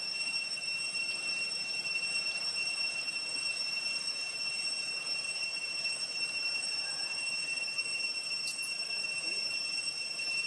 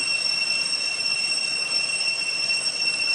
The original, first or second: second